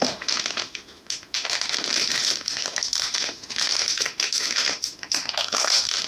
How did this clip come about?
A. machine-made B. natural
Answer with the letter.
A